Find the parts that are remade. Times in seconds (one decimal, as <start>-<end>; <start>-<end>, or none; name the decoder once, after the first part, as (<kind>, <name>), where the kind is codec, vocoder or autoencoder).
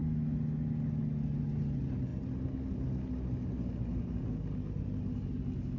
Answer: none